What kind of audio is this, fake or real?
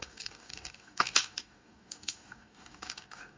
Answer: fake